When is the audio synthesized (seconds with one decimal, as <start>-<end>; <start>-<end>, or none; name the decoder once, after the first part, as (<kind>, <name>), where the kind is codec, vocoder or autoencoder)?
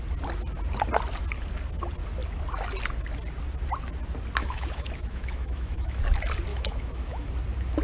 4.4-6.0 (autoencoder, DAC-VAE); 6.5-7.3